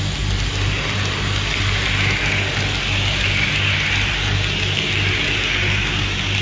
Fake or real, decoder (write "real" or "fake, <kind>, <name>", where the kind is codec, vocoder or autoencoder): real